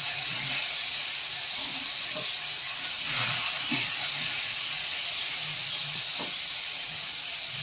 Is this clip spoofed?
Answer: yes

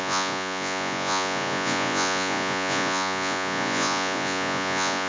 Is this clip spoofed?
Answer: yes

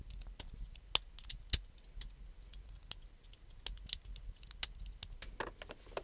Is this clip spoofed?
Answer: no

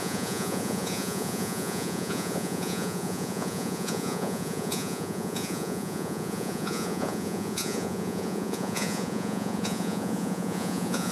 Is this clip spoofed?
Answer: yes